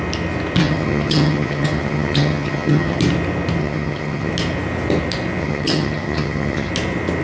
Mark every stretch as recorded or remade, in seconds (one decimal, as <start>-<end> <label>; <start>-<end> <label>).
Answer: 0.0-0.6 recorded; 0.6-3.0 remade; 3.0-3.6 recorded; 3.6-4.3 remade; 4.3-5.4 recorded; 5.4-6.7 remade; 6.7-7.2 recorded